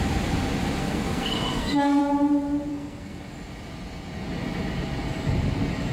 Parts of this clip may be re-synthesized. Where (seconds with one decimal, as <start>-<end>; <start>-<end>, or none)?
0.8-2.0; 2.7-3.2